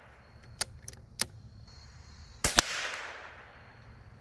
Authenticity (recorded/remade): remade